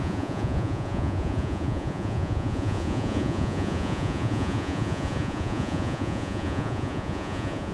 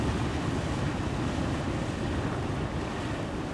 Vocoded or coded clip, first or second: first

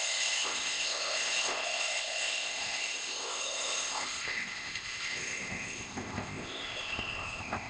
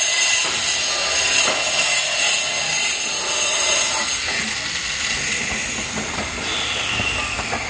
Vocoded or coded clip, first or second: first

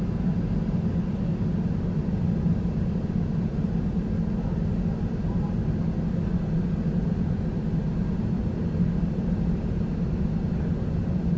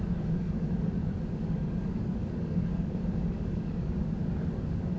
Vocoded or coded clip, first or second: second